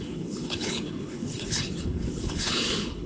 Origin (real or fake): fake